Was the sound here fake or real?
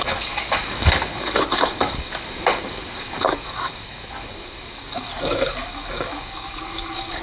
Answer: fake